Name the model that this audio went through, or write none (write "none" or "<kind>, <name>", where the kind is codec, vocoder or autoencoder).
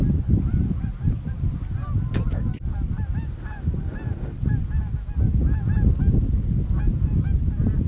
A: none